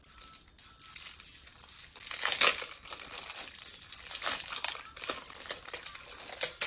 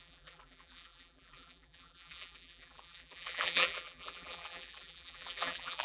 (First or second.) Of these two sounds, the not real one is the second